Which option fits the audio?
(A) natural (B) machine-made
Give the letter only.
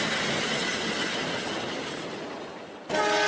A